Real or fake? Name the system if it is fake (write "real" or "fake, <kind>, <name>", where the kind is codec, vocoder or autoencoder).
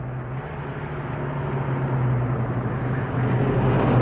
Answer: real